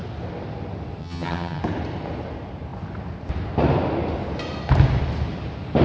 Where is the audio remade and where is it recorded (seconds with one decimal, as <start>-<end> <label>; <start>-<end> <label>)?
0.0-1.0 recorded; 1.0-1.6 remade; 1.6-5.8 recorded